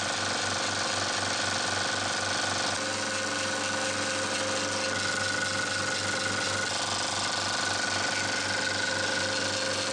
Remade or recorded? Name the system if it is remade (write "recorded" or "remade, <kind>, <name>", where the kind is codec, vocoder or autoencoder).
recorded